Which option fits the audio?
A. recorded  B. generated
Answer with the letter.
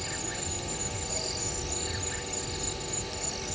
A